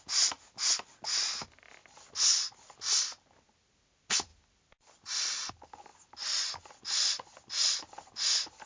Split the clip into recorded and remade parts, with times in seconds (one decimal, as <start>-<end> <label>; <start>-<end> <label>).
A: 0.0-8.7 recorded